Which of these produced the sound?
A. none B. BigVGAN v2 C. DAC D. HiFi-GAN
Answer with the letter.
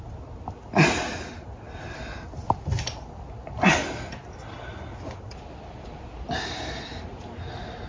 A